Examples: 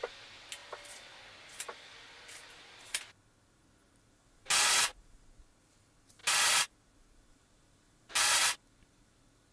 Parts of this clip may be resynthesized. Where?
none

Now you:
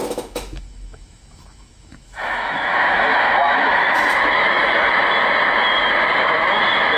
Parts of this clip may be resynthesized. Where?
0.0-4.6; 6.1-7.0